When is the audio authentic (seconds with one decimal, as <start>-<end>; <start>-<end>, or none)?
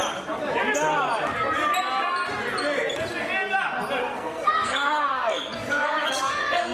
0.0-4.0